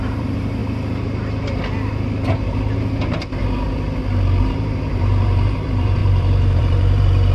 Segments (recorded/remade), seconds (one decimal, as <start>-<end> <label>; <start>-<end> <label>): 0.0-0.6 remade; 0.6-4.4 recorded; 4.4-7.3 remade